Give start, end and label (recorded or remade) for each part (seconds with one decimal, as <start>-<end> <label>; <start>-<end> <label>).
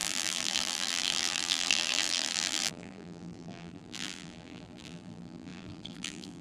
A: 0.0-6.4 remade